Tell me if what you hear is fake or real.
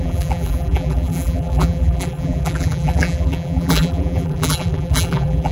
fake